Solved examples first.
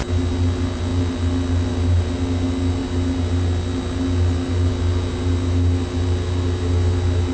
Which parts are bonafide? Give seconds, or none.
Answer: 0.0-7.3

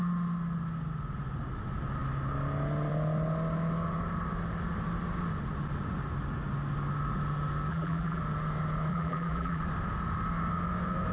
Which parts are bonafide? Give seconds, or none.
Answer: 0.0-7.7; 8.2-8.9; 9.6-11.1

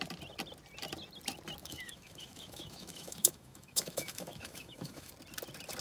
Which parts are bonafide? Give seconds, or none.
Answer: 0.0-1.6; 5.1-5.8

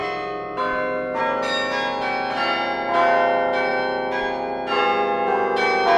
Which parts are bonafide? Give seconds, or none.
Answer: 0.0-6.0

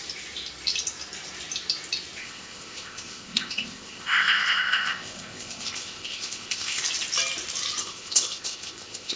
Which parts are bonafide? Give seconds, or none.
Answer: 0.0-2.2; 6.8-7.8